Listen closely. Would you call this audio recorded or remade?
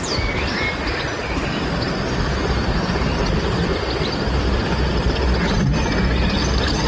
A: recorded